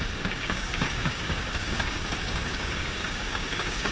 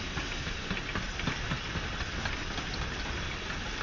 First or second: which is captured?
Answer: second